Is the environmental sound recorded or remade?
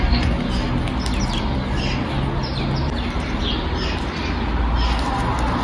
recorded